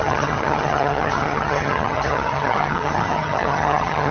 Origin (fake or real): fake